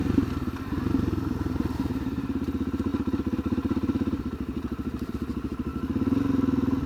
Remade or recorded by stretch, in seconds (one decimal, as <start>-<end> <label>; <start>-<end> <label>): 0.0-1.1 recorded; 1.1-5.7 remade; 5.7-6.9 recorded